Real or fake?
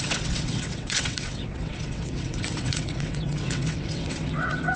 fake